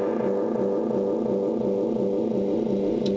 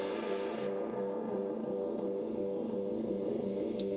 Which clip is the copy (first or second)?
second